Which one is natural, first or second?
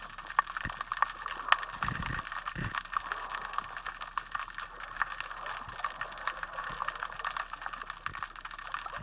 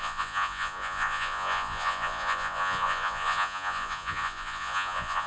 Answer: first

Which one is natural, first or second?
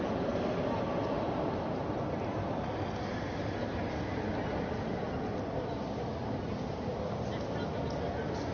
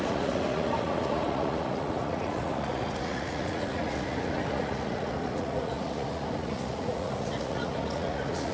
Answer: first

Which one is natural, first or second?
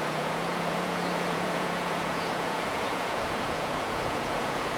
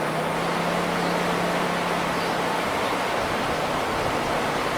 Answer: second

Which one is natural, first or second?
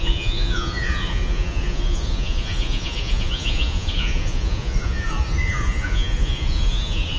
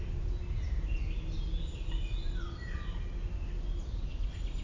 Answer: second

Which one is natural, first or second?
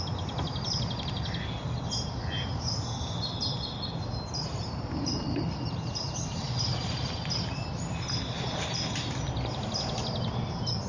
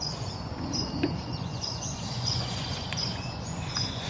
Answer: first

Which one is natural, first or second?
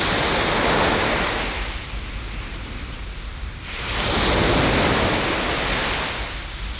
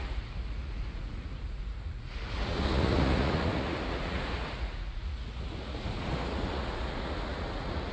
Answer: first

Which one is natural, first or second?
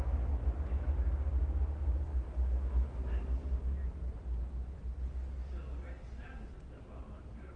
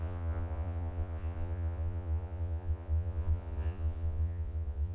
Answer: first